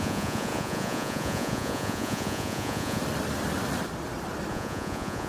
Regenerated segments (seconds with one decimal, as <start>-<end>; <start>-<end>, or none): 0.0-3.0; 4.5-5.3